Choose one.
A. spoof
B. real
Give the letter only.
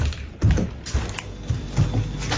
B